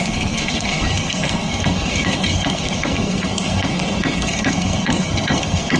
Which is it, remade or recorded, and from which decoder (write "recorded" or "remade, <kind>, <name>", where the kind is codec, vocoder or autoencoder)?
remade, codec, SNAC